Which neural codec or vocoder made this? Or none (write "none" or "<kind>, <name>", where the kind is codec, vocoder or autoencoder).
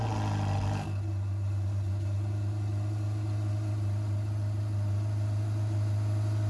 none